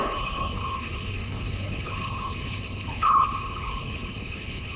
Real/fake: fake